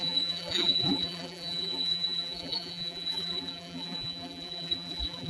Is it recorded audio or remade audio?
remade